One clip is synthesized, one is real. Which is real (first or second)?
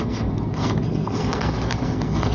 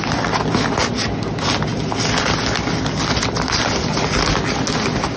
second